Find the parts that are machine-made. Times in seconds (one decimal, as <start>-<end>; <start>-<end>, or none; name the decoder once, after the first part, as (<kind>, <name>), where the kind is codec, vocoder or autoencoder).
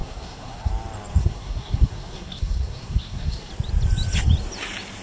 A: 0.0-0.7 (codec, SNAC); 1.2-3.5